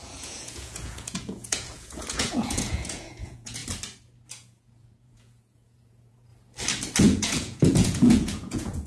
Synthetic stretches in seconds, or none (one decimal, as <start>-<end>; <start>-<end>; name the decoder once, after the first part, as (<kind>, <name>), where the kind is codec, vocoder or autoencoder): 0.0-3.6 (vocoder, Vocos); 4.3-6.3; 7.0-8.9